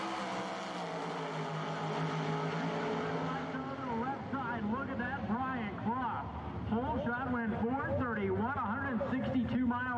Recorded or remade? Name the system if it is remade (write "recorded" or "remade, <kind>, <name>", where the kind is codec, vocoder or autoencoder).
recorded